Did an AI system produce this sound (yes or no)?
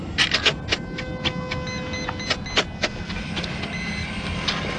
no